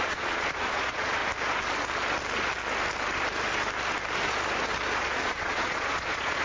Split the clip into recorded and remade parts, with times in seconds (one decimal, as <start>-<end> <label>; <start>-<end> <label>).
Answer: 0.0-1.2 remade; 1.2-5.0 recorded; 5.0-6.4 remade